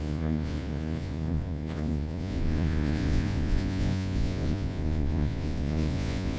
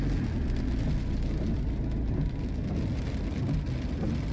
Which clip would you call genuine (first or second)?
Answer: second